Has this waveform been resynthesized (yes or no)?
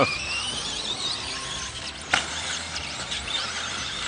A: no